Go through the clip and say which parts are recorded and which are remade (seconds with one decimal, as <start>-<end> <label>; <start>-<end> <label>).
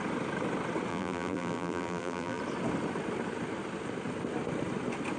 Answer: 0.0-0.9 recorded; 0.9-2.4 remade; 2.4-5.2 recorded